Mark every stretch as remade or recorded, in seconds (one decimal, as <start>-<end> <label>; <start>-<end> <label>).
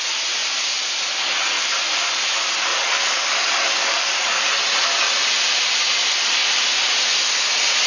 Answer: 0.0-2.7 recorded; 2.7-4.5 remade; 4.5-7.9 recorded